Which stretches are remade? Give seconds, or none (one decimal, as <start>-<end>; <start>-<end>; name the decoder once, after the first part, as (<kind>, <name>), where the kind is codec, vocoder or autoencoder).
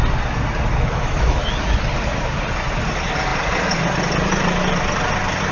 0.7-1.5 (autoencoder, DAC-VAE)